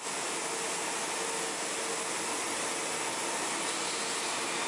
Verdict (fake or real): real